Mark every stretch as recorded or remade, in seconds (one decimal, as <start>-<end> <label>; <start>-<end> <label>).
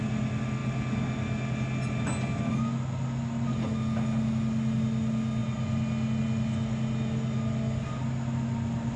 0.0-9.0 recorded